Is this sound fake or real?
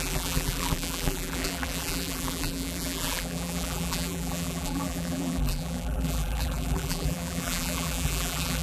fake